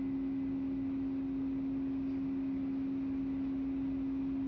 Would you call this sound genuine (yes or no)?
yes